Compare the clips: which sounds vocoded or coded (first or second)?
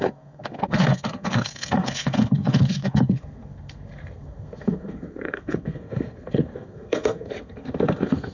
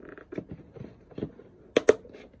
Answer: first